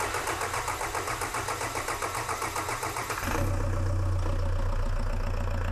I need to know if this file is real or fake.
real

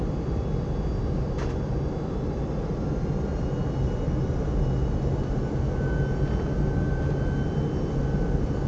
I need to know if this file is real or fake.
real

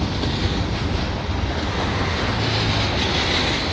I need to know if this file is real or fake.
real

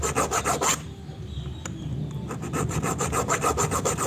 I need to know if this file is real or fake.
real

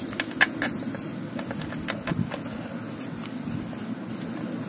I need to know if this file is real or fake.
real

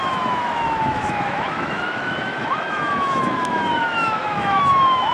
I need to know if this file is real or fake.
fake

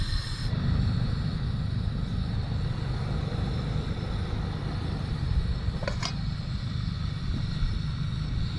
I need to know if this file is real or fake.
real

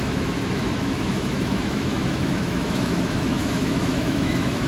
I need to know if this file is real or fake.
fake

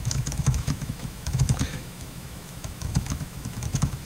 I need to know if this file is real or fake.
fake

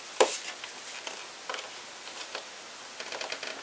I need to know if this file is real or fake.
real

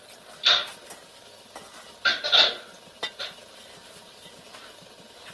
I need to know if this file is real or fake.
real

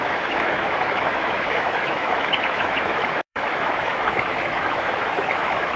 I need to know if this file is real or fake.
fake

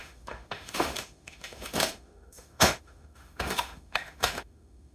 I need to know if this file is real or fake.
fake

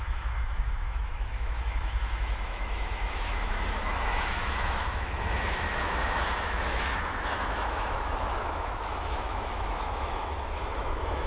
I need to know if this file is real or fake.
fake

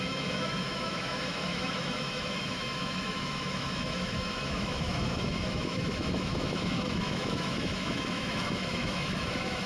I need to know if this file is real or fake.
fake